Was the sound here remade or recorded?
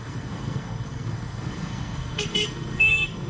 remade